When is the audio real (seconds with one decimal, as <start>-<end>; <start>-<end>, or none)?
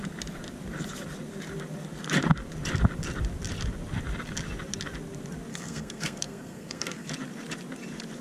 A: 0.0-5.5; 7.1-8.2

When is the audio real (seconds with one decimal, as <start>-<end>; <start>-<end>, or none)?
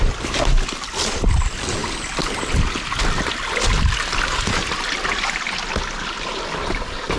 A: 0.0-7.2